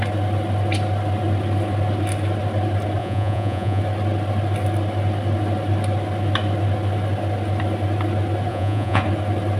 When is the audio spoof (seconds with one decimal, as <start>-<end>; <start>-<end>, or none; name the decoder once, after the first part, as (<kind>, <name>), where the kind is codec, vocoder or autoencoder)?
3.0-3.8 (vocoder, Vocos); 8.5-9.0